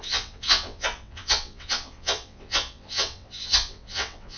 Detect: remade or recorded remade